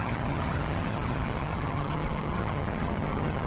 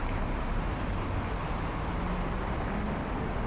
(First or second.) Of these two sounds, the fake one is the first